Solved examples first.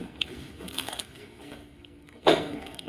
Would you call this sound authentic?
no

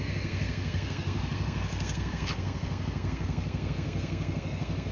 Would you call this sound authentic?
no